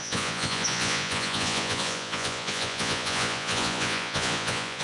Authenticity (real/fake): fake